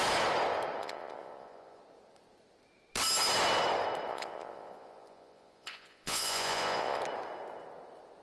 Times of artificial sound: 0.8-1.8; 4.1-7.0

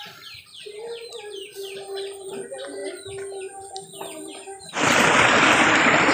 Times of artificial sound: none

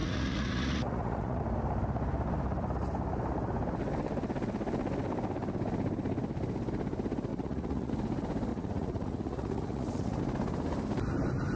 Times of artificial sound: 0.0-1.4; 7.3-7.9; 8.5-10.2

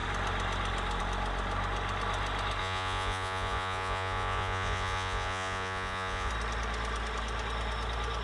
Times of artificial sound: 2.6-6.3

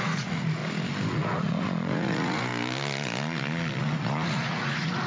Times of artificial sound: 0.0-0.6; 1.1-2.5; 3.8-5.1

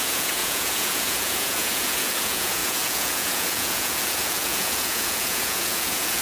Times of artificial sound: 0.0-6.2

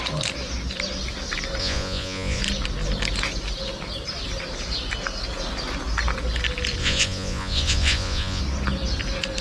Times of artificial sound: 1.6-2.4; 6.8-8.4

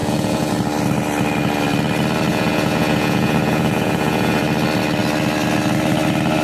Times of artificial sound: 0.0-0.5; 2.3-4.4